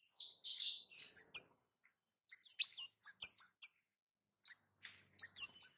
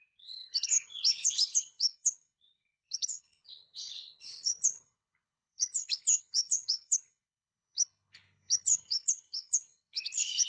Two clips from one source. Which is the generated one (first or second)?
second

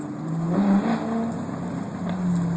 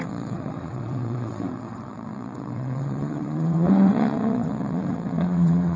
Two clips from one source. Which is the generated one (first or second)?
second